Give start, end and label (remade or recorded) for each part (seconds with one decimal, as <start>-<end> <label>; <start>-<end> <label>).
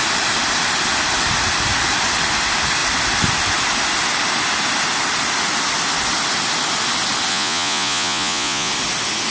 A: 0.0-7.3 recorded; 7.3-8.7 remade; 8.7-9.3 recorded